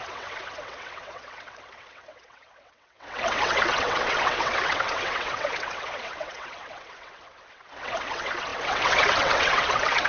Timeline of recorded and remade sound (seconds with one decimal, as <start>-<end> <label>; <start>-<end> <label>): 0.0-10.1 remade